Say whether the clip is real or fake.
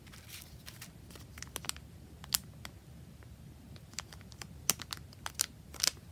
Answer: real